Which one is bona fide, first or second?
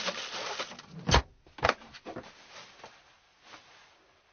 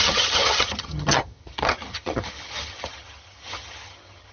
first